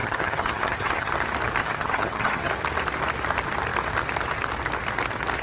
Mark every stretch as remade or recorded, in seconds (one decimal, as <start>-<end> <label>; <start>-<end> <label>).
0.0-1.1 remade; 1.1-1.6 recorded; 1.6-2.5 remade; 2.5-5.4 recorded